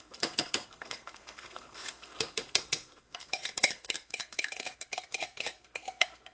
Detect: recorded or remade remade